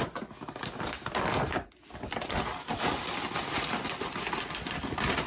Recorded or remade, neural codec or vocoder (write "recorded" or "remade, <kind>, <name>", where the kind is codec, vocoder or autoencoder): recorded